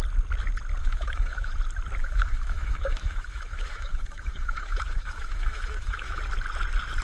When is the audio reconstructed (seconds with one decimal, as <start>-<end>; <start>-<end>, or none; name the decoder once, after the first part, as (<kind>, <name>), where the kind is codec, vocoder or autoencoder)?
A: 0.8-1.5 (autoencoder, DAC-VAE); 2.0-6.2